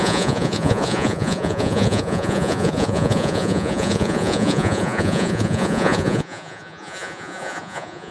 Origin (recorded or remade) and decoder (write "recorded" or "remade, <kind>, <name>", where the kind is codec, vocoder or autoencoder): remade, vocoder, Vocos